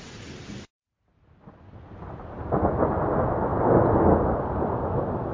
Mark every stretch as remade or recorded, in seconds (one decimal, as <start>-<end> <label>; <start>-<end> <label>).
0.0-5.3 recorded